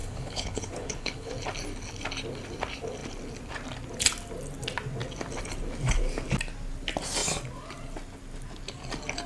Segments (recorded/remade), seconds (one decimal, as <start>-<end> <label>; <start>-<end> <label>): 0.0-1.3 remade; 1.3-9.3 recorded